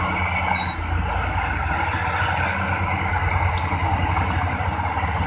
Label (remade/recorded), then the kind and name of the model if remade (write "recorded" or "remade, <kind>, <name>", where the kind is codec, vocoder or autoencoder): recorded